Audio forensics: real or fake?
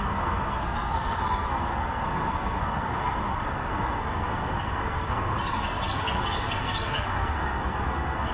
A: fake